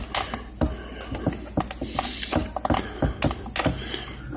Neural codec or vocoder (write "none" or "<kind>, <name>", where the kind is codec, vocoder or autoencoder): none